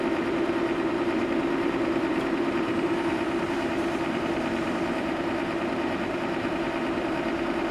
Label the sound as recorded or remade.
remade